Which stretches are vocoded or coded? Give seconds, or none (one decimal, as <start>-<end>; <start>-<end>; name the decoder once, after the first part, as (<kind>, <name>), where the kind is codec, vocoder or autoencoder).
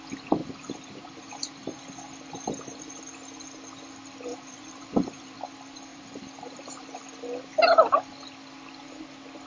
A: 0.4-1.8 (vocoder, BigVGAN v2); 4.3-5.4; 5.9-7.0